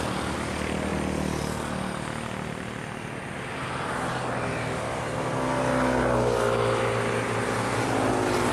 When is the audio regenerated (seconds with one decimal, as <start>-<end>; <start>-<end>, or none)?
none